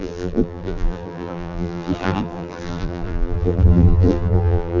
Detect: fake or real fake